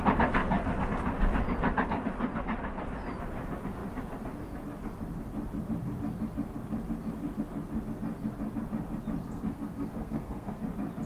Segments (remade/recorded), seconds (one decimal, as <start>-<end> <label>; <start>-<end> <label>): 0.0-9.2 recorded; 9.2-10.6 remade; 10.6-11.1 recorded